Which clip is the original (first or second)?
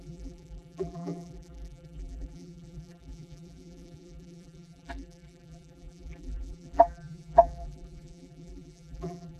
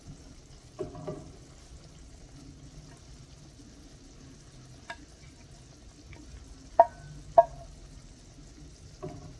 second